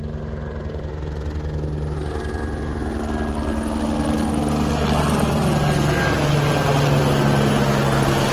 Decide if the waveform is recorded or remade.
recorded